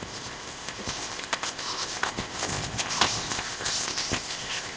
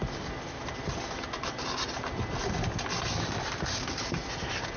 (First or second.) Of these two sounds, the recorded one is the second